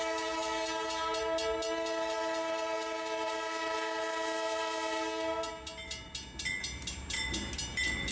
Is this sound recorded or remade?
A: recorded